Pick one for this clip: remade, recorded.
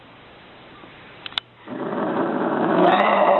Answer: remade